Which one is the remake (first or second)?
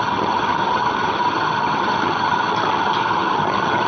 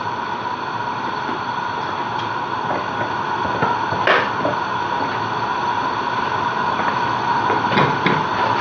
first